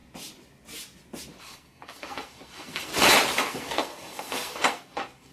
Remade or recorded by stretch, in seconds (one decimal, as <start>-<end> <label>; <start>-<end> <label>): 0.0-1.4 recorded; 1.4-2.9 remade; 2.9-3.4 recorded; 3.4-5.3 remade